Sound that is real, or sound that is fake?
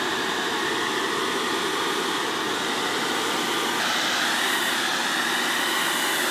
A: real